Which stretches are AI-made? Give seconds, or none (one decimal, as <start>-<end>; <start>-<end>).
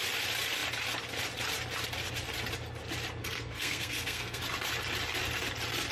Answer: 3.2-4.4